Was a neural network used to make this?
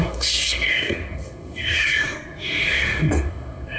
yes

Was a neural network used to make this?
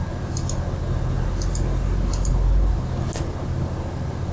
no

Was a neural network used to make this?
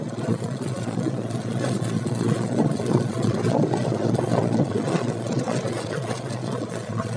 yes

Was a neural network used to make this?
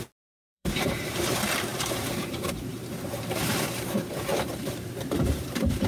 yes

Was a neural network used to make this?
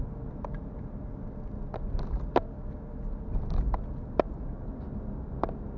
no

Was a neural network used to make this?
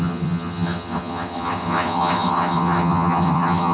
yes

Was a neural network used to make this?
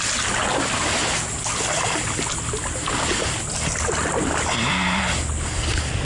no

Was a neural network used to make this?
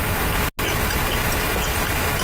no